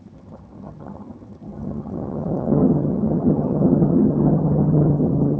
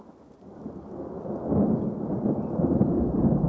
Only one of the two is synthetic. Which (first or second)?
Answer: first